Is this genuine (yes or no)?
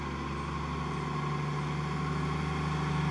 yes